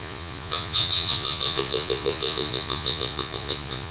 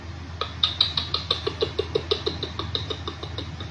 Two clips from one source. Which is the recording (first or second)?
second